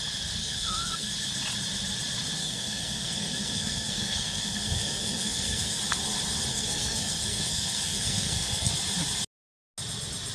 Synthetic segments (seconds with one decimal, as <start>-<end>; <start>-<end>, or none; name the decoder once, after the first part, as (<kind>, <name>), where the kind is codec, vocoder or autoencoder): 0.4-1.1 (codec, SNAC); 2.4-5.8; 6.5-8.7